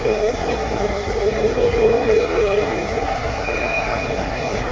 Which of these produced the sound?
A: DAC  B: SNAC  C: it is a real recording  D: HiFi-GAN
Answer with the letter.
B